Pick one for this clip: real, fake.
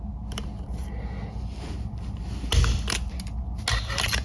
real